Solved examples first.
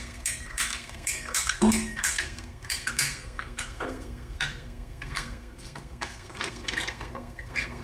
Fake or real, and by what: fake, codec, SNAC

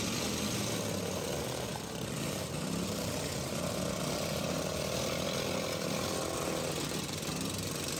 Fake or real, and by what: real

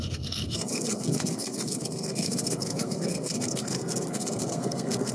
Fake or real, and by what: fake, codec, SNAC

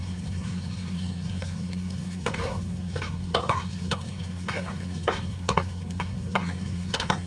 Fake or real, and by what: fake, codec, SNAC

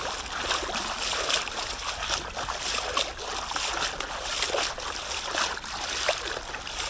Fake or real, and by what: real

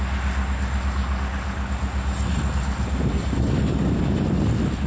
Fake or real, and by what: real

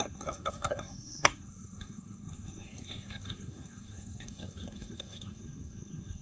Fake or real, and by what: fake, codec, SNAC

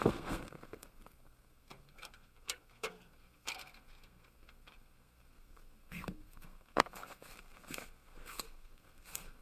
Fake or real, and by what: fake, codec, SNAC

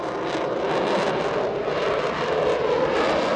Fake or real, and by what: real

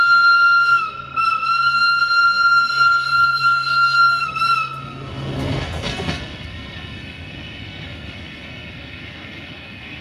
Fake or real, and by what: fake, codec, SNAC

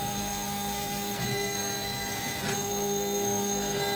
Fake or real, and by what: fake, codec, SNAC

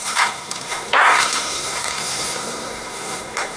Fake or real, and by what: fake, codec, SNAC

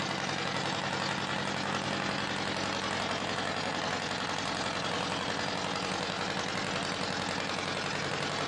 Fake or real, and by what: real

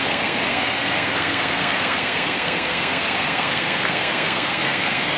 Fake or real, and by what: fake, codec, SNAC